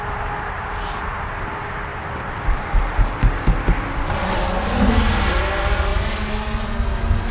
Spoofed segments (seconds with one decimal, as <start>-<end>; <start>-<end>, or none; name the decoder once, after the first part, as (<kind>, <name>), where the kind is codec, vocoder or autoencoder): 1.9-4.3 (vocoder, BigVGAN v2)